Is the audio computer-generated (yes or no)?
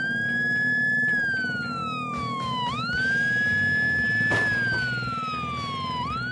no